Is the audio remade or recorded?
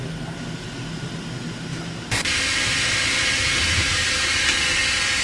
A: recorded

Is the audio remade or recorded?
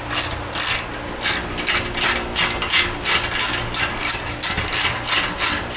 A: recorded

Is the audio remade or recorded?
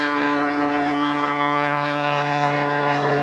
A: remade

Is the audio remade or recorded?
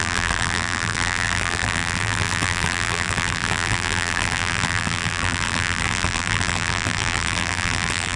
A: remade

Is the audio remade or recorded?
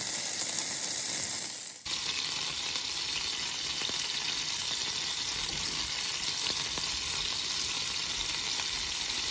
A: recorded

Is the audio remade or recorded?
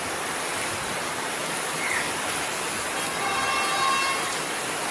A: recorded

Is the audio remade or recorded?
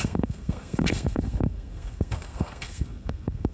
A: remade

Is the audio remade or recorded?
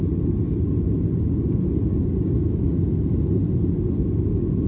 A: recorded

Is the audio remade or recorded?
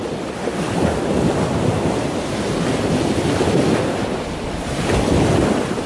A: remade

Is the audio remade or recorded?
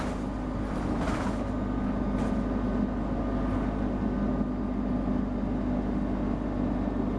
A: recorded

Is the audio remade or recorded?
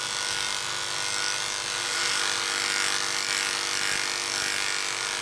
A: recorded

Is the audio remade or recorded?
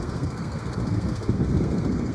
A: remade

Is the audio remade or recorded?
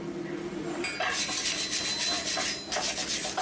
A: recorded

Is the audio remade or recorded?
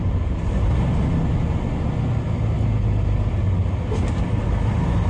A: recorded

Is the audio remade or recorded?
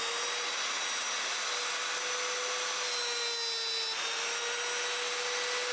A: recorded